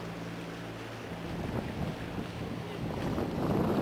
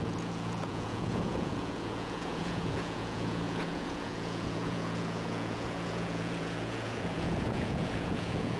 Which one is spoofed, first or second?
second